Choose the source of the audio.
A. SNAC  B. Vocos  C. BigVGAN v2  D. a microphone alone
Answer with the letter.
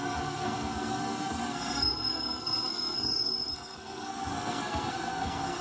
A